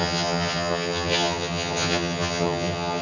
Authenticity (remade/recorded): remade